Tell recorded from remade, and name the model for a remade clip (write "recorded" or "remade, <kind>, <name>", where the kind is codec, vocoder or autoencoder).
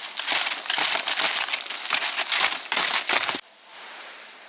recorded